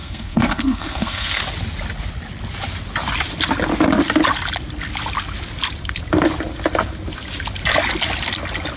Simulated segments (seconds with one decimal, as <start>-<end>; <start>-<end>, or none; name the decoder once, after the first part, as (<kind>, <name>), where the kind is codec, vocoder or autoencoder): 0.0-1.4 (codec, SNAC)